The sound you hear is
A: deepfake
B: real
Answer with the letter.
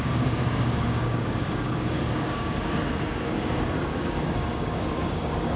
A